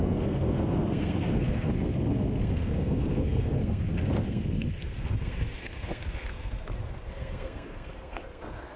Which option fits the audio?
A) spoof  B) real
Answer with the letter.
A